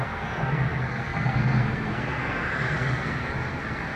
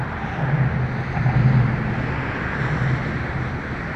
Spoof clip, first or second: first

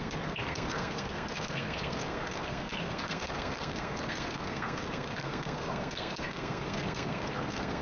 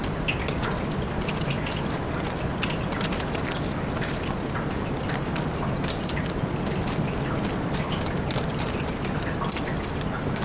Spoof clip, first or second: first